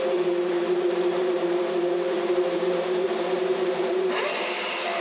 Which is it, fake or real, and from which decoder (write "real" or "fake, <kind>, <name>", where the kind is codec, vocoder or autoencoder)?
fake, vocoder, BigVGAN v2